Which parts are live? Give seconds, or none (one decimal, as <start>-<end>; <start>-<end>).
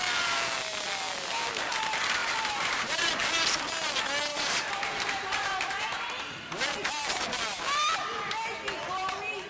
0.0-2.2; 3.2-4.3; 6.2-9.5